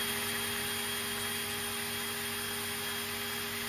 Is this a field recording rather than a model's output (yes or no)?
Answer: yes